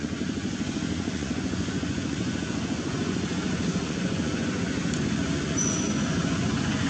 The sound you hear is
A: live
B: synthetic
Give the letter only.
B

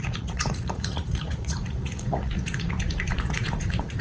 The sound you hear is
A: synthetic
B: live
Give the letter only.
A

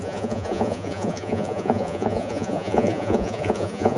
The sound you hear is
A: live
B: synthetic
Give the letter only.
B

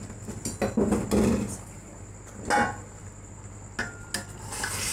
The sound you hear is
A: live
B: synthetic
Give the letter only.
A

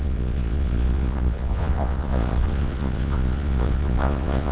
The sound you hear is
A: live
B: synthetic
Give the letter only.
B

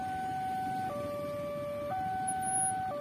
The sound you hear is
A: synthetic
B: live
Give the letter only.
B